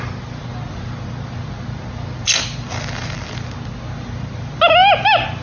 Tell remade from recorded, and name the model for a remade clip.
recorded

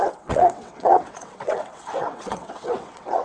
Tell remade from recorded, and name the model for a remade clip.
remade, vocoder, WaveNeXt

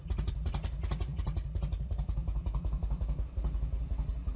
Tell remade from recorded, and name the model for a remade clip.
recorded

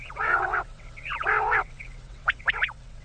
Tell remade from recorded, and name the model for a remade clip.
remade, vocoder, WaveNeXt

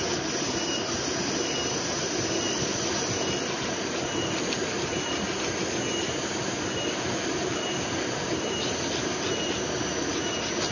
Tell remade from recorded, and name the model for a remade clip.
recorded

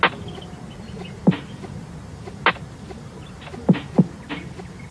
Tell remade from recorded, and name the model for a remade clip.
recorded